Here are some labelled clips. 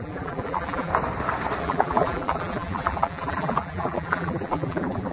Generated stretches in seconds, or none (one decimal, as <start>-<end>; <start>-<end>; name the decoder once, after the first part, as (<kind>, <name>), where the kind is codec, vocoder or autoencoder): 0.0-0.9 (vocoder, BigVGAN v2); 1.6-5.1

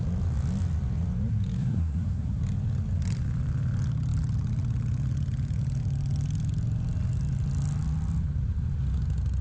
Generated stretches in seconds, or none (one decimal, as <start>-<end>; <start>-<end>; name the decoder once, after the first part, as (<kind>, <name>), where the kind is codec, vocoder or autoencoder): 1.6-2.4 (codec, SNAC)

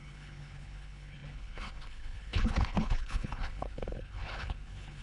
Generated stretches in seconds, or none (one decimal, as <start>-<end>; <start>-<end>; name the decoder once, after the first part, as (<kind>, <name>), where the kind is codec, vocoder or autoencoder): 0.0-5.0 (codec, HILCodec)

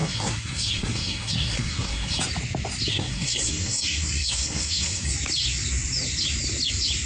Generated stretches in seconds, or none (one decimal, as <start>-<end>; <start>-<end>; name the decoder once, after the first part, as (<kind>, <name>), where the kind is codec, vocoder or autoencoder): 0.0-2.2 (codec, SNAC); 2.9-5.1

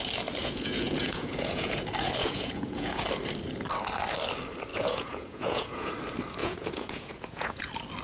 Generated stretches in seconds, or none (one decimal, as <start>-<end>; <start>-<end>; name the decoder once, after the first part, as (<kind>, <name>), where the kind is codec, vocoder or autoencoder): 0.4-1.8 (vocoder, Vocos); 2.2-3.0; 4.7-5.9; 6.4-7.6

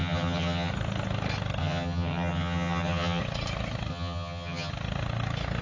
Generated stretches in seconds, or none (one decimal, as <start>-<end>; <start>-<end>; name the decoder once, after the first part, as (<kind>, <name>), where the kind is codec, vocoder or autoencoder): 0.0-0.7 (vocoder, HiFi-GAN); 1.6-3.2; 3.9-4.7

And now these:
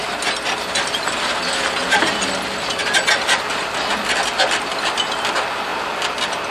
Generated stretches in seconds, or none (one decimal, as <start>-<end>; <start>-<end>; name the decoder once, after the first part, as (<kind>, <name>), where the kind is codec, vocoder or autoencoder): none